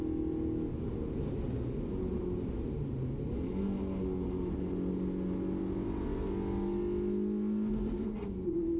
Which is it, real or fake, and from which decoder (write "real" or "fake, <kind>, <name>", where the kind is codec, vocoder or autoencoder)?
real